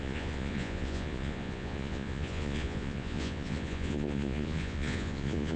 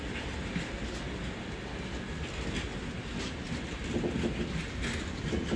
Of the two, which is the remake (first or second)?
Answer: first